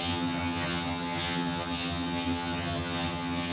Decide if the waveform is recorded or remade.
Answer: remade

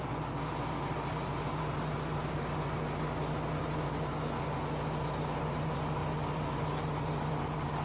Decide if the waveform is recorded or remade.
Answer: recorded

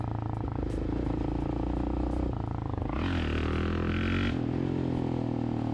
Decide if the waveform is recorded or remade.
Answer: recorded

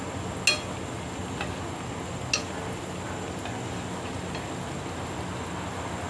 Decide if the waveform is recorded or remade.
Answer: recorded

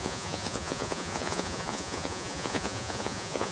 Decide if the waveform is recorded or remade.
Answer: remade